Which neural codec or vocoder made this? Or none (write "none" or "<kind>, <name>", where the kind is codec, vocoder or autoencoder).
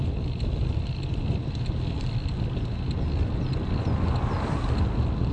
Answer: none